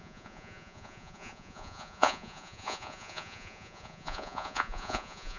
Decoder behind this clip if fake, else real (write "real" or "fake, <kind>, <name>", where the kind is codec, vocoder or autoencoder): fake, vocoder, Vocos